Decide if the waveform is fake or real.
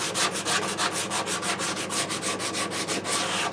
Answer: real